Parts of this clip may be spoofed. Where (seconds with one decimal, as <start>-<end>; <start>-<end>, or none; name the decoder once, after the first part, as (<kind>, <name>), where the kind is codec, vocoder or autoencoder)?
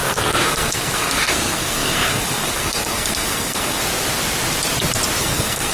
0.0-3.8 (codec, SNAC); 5.2-5.7